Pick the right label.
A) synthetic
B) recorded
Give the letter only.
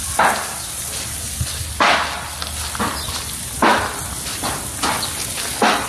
B